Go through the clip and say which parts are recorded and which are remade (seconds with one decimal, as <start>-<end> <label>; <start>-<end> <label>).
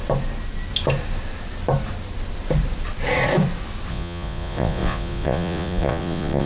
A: 0.0-3.9 recorded; 3.9-6.5 remade